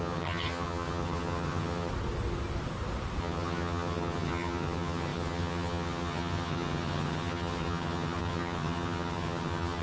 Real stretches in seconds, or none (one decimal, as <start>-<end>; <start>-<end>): 1.9-3.2